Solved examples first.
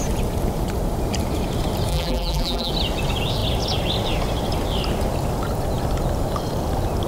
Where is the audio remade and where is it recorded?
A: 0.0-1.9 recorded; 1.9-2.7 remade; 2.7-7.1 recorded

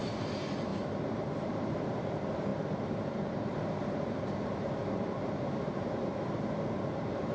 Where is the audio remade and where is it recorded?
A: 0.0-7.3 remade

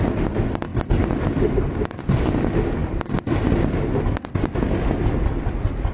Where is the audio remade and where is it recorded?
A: 0.0-0.7 recorded; 0.7-2.0 remade; 2.0-5.9 recorded